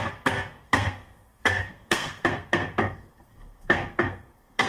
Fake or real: fake